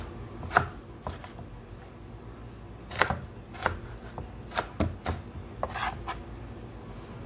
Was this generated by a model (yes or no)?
no